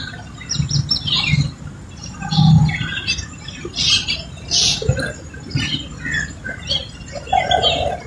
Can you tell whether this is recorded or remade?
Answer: recorded